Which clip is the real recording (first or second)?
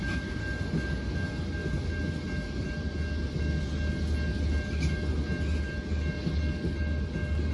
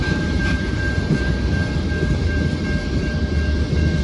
first